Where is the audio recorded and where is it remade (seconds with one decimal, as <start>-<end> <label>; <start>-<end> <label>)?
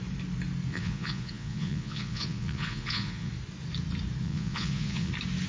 0.0-0.7 recorded; 0.7-3.3 remade; 3.3-4.2 recorded; 4.2-5.1 remade; 5.1-5.5 recorded